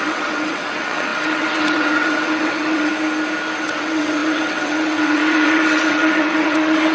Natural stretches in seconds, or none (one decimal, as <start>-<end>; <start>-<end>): 2.9-3.6